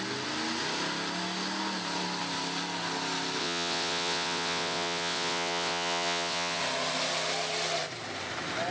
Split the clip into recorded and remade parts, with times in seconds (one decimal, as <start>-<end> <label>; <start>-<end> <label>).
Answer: 0.0-3.4 recorded; 3.4-6.6 remade; 6.6-8.7 recorded

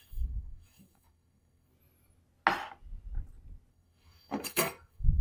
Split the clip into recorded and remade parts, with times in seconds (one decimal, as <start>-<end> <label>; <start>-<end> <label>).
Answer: 0.0-1.7 remade; 1.7-3.7 recorded; 3.7-5.2 remade

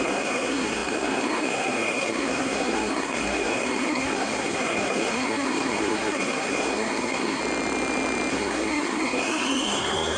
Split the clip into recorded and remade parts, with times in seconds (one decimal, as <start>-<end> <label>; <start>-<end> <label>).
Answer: 0.0-7.4 remade; 7.4-8.3 recorded; 8.3-10.2 remade

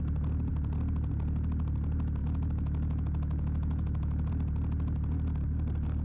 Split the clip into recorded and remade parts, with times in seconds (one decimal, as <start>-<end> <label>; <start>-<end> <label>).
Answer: 0.0-2.2 recorded; 2.2-4.3 remade; 4.3-6.0 recorded